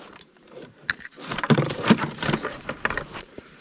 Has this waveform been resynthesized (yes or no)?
yes